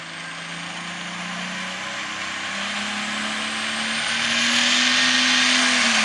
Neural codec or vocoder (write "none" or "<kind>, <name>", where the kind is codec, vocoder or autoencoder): none